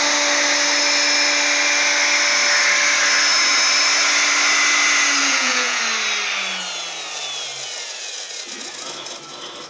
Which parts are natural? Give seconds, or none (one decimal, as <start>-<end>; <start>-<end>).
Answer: 0.0-5.2; 5.8-9.7